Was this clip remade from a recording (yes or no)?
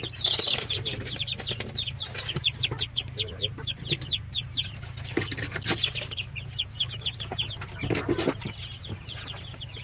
yes